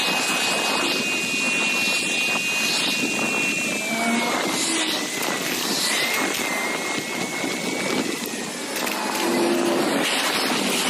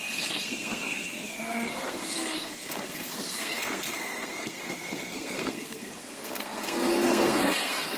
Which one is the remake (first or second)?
second